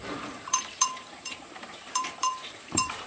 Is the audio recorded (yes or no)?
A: no